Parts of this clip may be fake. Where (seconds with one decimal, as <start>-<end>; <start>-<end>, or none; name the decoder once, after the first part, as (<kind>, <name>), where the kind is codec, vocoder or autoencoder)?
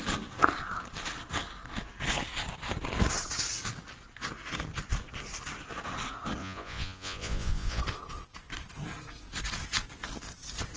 6.4-7.8 (vocoder, Vocos)